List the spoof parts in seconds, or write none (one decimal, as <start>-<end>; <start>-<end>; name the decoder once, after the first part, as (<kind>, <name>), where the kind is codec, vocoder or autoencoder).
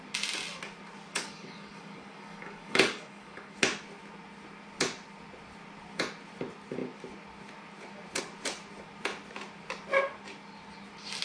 1.1-3.6 (codec, DAC)